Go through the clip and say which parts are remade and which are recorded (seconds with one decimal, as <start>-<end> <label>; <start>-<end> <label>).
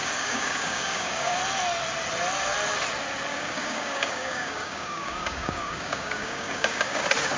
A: 0.0-1.4 remade; 1.4-3.3 recorded; 3.3-7.0 remade; 7.0-7.4 recorded